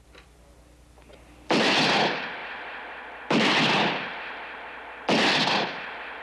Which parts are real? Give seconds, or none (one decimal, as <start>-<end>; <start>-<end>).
0.0-6.2